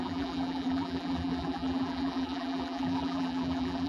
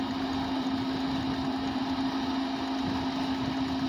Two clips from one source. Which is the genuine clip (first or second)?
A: second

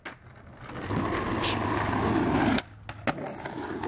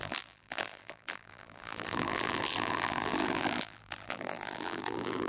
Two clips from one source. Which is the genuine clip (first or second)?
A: first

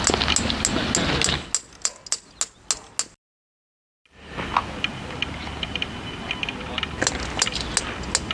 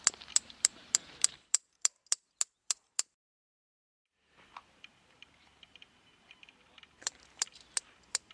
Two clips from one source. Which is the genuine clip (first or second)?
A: first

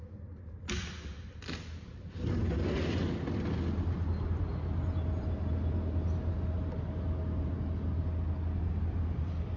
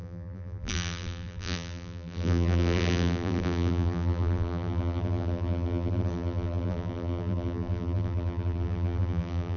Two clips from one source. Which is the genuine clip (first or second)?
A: first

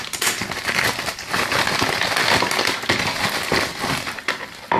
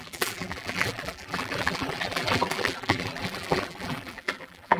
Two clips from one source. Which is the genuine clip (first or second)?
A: first